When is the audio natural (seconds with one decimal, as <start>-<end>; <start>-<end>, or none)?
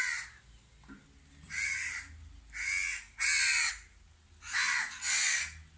0.0-5.8